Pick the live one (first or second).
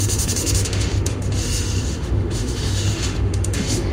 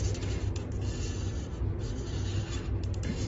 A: second